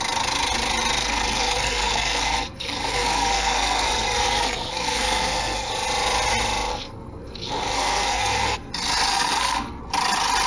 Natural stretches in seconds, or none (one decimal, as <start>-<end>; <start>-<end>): 0.0-1.0; 5.7-6.7; 8.7-9.1; 9.8-10.5